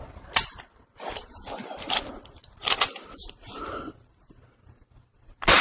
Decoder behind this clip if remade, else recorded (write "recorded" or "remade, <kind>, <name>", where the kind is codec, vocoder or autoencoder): recorded